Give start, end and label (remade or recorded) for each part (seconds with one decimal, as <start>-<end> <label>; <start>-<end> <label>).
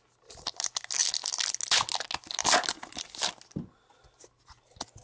0.0-5.0 recorded